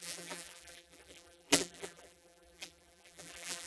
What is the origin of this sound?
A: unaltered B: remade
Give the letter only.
B